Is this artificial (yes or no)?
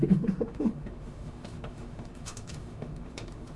yes